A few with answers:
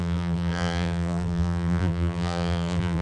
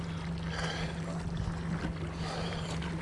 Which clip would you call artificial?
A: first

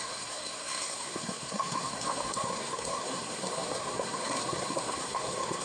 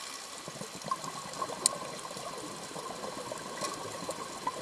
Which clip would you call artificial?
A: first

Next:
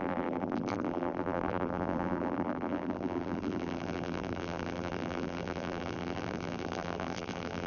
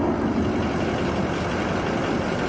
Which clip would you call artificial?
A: first